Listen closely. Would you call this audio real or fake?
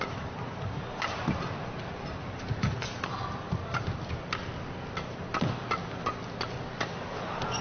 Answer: real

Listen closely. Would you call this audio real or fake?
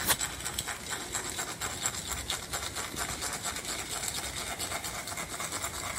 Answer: real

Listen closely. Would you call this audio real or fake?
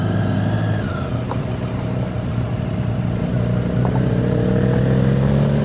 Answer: real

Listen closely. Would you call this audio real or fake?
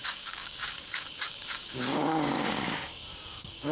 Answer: fake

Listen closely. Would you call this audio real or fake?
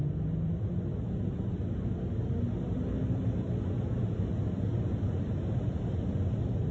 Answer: real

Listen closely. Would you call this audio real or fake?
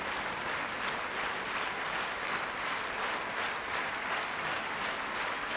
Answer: real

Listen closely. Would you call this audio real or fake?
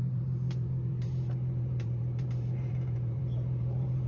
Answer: fake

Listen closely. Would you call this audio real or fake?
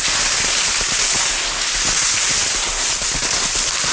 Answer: real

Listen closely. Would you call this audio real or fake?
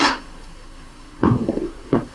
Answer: fake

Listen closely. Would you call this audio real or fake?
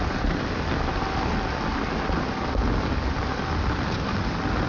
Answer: real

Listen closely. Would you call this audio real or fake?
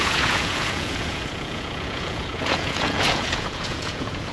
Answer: fake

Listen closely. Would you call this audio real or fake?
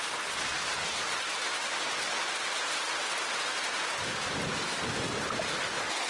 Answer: real